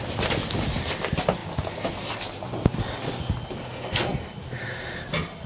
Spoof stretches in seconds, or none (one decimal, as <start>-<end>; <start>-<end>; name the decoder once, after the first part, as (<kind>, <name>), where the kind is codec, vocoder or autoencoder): none